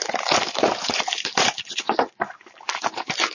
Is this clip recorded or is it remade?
remade